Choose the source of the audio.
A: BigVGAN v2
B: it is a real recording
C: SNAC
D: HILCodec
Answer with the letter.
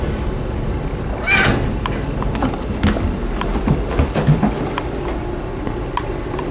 B